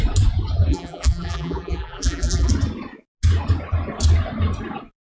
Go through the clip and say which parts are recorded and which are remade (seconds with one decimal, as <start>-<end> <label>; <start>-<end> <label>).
0.0-0.7 recorded; 0.7-2.5 remade; 2.5-5.0 recorded